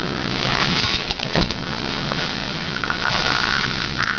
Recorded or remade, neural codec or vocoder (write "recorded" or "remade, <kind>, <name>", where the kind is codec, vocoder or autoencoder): remade, vocoder, WaveNeXt